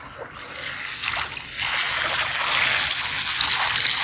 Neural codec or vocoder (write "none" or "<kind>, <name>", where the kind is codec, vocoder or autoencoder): none